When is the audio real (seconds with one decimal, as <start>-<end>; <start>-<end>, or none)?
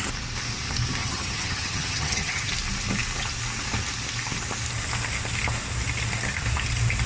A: 0.0-1.0; 2.5-7.1